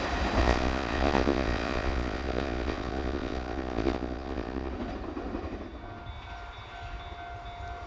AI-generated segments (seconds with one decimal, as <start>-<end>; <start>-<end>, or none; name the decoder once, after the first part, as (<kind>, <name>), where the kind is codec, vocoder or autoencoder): 0.4-4.7 (vocoder, Vocos)